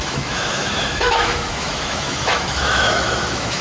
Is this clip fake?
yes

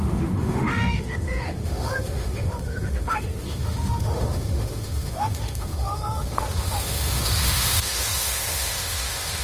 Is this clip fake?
yes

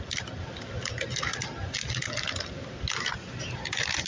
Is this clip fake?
no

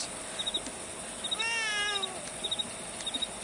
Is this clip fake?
no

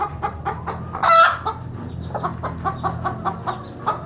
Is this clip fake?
no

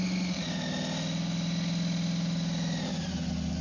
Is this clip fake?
no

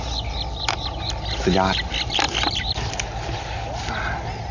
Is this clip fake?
no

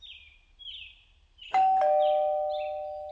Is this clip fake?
no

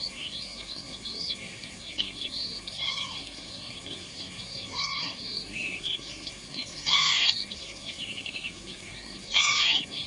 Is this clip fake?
yes